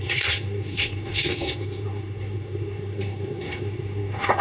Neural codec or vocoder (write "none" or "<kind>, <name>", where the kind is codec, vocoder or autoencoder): codec, SNAC